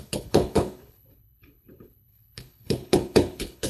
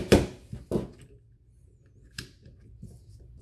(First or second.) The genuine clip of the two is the second